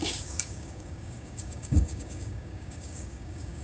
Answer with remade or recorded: remade